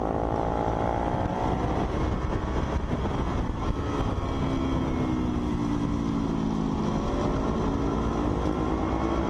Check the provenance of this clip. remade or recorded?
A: recorded